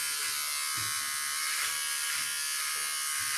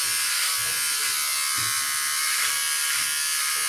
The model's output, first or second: second